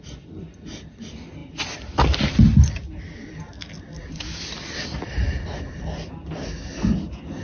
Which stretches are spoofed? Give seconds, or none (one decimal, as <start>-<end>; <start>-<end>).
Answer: none